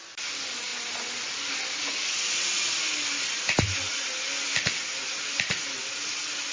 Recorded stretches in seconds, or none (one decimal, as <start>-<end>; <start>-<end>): 0.0-6.5